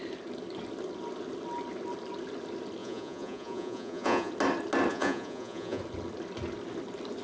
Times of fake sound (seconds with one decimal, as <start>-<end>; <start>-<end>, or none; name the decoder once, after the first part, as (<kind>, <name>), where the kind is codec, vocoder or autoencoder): 2.8-4.3 (vocoder, Vocos); 4.9-5.8